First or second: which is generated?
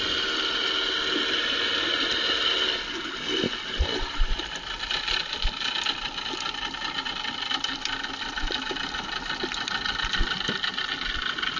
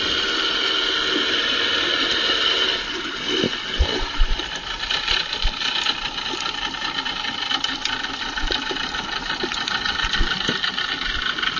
second